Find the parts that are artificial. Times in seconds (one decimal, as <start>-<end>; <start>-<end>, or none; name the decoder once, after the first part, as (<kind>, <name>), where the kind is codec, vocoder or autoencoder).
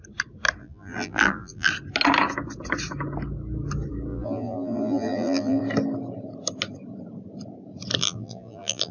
0.6-1.7 (vocoder, BigVGAN v2); 4.1-5.6; 8.0-8.9